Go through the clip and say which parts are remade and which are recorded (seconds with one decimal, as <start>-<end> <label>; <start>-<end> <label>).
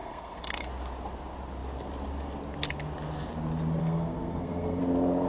0.0-0.7 remade; 0.7-3.8 recorded; 3.8-4.8 remade; 4.8-5.3 recorded